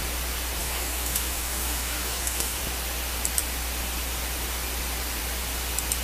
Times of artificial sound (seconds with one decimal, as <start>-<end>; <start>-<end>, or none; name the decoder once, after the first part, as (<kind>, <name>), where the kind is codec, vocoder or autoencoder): 0.6-2.6 (codec, DAC)